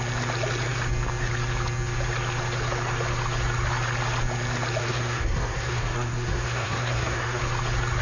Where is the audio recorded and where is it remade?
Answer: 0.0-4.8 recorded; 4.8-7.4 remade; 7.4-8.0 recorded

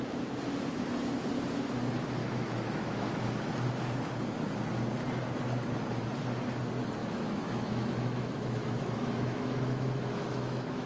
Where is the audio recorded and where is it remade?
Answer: 0.0-2.2 recorded; 2.2-3.1 remade; 3.1-7.0 recorded; 7.0-10.9 remade

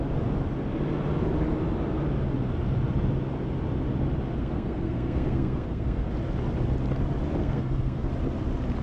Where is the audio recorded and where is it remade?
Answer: 0.0-4.4 recorded; 4.4-6.1 remade; 6.1-7.4 recorded; 7.4-8.1 remade; 8.1-8.8 recorded